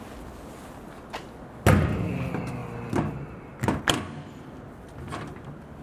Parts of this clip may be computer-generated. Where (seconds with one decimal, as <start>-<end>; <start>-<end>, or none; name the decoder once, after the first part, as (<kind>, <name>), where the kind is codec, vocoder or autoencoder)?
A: none